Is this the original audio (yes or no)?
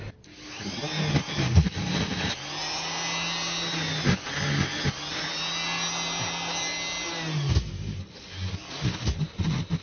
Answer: yes